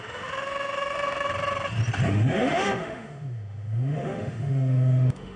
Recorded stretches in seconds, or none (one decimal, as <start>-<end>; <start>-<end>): 1.3-2.1